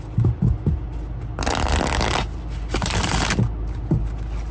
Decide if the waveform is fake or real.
real